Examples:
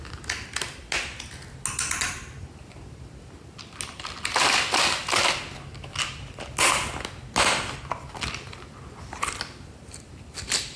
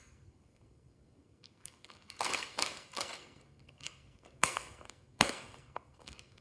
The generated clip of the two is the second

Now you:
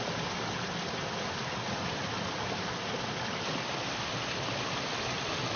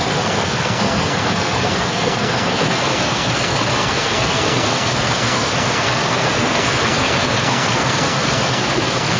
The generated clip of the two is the second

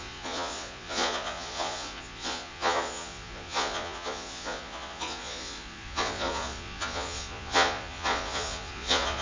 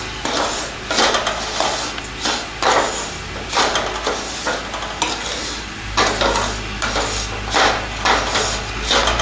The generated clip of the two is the first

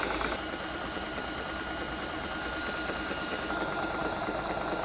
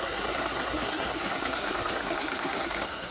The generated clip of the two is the second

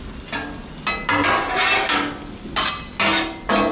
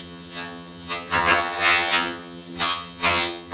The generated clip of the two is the second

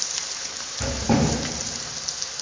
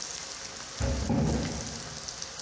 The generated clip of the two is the first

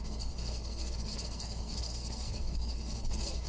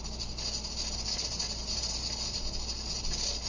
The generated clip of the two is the first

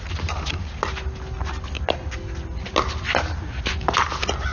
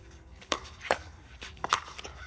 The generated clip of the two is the second